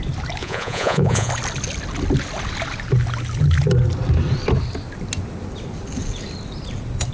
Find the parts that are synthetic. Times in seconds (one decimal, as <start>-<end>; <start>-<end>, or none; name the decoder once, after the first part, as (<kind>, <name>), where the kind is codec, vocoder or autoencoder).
0.4-1.3 (vocoder, Vocos)